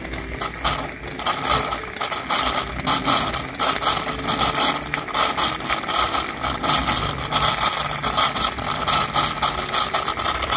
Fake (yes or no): no